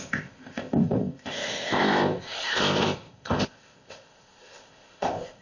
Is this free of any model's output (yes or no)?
no